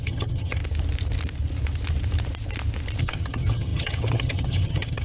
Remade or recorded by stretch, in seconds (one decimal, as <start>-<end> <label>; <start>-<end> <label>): 0.0-0.6 remade; 0.6-3.0 recorded; 3.0-5.0 remade